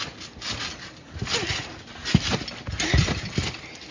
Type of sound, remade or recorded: recorded